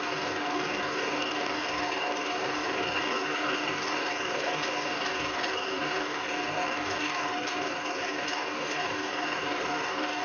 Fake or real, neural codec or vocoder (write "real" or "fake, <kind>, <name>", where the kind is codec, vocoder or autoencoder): fake, codec, DAC